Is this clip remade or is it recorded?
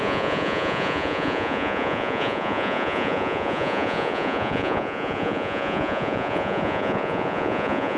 remade